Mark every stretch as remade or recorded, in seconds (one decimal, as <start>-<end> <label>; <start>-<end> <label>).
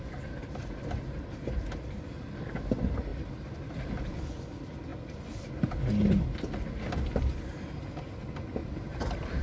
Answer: 0.0-8.6 recorded; 8.6-9.4 remade